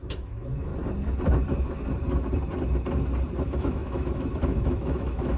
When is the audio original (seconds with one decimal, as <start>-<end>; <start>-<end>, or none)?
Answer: 0.7-3.4